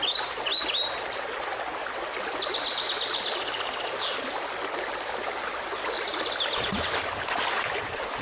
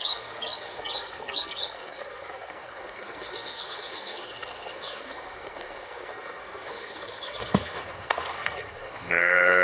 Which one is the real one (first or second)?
first